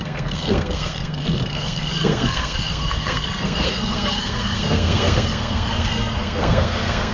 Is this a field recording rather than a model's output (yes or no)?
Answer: no